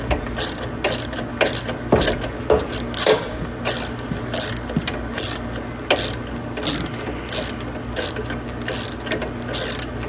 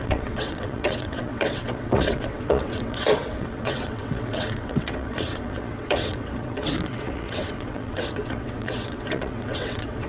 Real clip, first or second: first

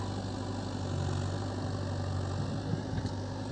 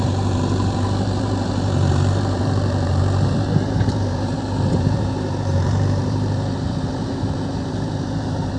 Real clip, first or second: first